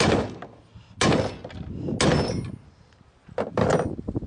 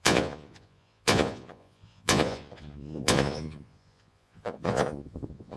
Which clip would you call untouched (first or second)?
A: first